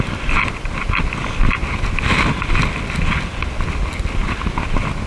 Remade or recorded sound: recorded